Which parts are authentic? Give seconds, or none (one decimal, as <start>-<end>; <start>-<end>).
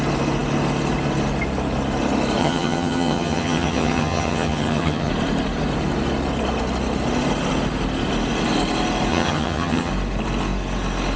0.0-2.4; 5.1-9.1; 9.9-11.2